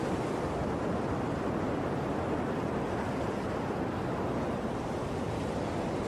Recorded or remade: recorded